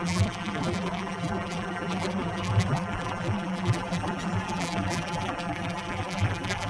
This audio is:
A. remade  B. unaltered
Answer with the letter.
A